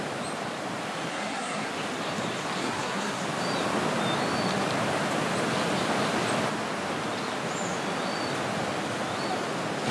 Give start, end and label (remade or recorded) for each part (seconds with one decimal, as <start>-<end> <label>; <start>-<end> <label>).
0.0-1.1 recorded; 1.1-1.7 remade; 1.7-2.6 recorded; 2.6-3.2 remade; 3.2-9.9 recorded

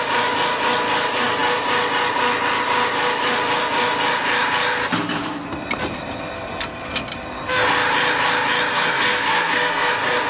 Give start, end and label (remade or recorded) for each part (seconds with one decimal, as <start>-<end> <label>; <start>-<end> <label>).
0.0-8.7 recorded; 8.7-9.9 remade; 9.9-10.3 recorded

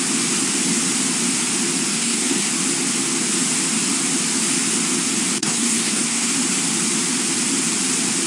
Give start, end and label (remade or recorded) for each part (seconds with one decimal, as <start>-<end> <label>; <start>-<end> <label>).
0.0-1.9 recorded; 1.9-2.5 remade; 2.5-5.4 recorded; 5.4-6.3 remade; 6.3-8.3 recorded

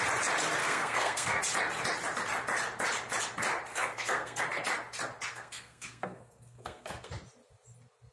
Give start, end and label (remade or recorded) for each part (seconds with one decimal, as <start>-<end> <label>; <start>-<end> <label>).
0.0-0.6 recorded; 0.6-1.4 remade; 1.4-3.7 recorded; 3.7-4.4 remade; 4.4-5.3 recorded; 5.3-7.1 remade; 7.1-8.1 recorded

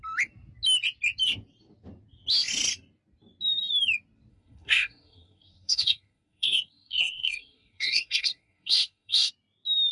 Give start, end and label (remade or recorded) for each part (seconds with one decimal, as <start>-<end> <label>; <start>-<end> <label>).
0.0-4.3 recorded; 4.3-9.3 remade; 9.3-9.9 recorded